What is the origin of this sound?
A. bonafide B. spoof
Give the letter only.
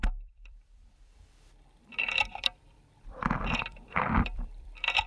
B